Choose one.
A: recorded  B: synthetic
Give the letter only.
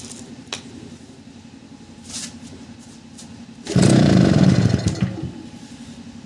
A